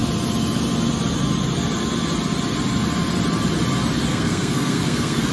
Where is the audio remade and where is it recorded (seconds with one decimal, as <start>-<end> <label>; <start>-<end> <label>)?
0.0-4.1 recorded; 4.1-5.3 remade